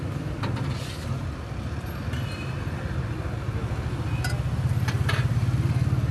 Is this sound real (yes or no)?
yes